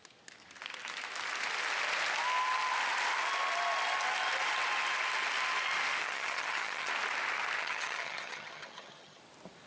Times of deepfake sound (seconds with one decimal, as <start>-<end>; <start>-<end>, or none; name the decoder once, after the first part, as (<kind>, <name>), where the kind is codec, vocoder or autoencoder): 6.0-6.9 (vocoder, HiFi-GAN); 7.6-9.2